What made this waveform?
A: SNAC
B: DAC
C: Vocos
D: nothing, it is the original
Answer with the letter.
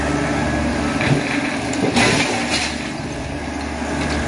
D